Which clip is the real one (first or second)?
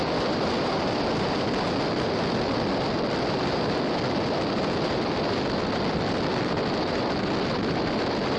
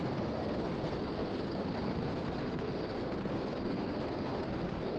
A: first